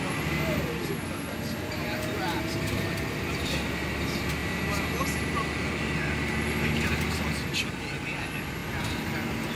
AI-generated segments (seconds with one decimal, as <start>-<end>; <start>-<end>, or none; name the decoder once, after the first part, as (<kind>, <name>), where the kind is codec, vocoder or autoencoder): none